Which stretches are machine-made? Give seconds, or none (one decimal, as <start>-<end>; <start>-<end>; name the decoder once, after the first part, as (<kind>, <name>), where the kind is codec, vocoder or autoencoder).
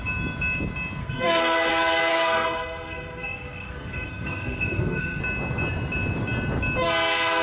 1.0-1.7 (codec, SNAC); 2.1-5.2